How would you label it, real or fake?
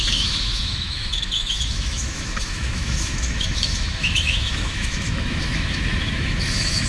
fake